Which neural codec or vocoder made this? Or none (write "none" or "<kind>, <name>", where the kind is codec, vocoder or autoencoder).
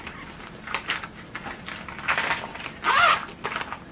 none